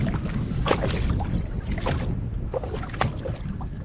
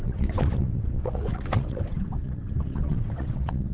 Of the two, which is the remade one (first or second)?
second